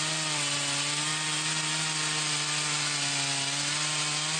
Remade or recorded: recorded